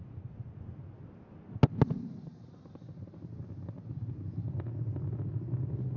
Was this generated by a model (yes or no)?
no